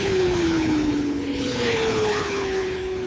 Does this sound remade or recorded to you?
remade